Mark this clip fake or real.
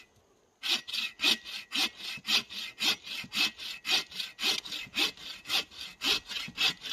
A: real